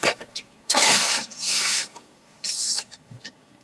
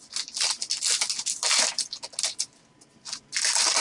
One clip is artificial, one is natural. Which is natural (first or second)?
second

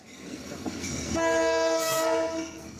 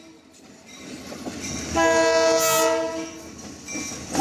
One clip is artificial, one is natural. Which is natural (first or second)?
second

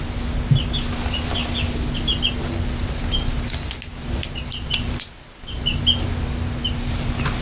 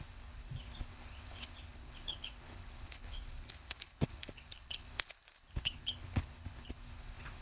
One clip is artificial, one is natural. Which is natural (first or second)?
first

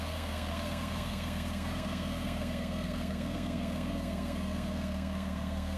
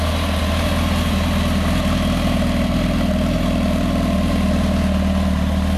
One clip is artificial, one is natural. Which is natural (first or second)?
second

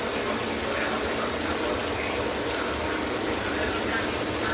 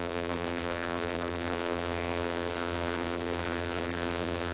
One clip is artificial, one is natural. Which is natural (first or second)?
first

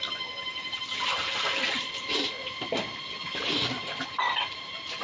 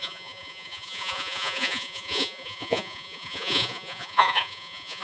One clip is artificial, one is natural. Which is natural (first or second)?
first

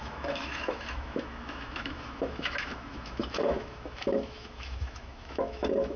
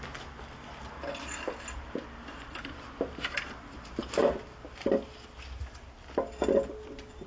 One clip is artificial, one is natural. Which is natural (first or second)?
second